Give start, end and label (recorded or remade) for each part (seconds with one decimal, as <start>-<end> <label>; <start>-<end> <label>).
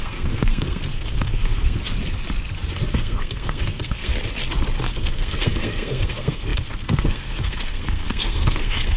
0.0-1.9 remade; 1.9-2.9 recorded; 2.9-4.1 remade; 4.1-4.9 recorded; 4.9-9.0 remade